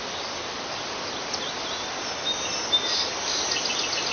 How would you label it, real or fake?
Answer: real